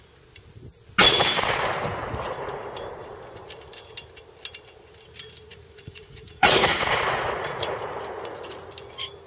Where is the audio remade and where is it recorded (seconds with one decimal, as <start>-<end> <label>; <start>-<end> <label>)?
0.0-2.0 recorded; 2.0-2.6 remade; 2.6-5.5 recorded; 5.5-8.7 remade; 8.7-9.3 recorded